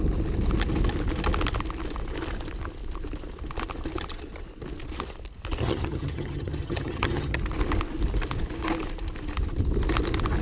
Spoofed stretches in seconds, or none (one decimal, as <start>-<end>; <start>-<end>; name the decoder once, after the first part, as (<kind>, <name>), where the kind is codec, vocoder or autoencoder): 5.6-7.4 (vocoder, HiFi-GAN)